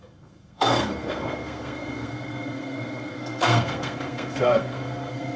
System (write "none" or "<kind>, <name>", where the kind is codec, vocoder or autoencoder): codec, SNAC